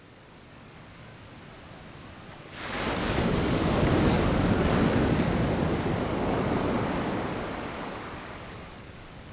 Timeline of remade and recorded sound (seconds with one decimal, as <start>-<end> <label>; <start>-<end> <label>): 0.0-1.1 remade; 1.1-2.3 recorded; 2.3-9.3 remade